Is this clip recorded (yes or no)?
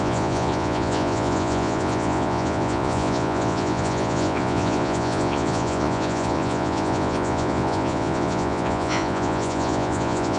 no